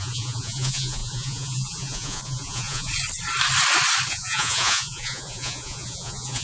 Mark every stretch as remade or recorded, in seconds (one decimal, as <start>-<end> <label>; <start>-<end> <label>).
0.0-2.9 remade; 2.9-4.1 recorded; 4.1-6.4 remade